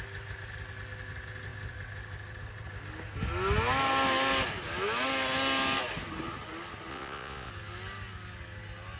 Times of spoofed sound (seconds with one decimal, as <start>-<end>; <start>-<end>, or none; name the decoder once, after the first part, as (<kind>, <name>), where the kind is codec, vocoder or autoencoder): 6.9-7.5 (vocoder, Vocos)